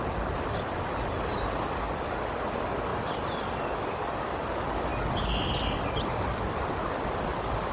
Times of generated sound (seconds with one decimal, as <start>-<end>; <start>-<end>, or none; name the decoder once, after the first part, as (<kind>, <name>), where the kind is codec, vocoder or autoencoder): none